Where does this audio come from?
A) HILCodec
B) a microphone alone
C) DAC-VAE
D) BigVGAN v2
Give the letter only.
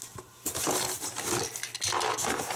B